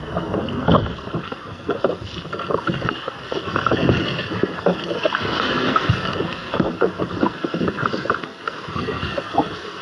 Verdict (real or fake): fake